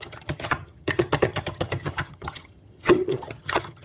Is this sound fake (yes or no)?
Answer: yes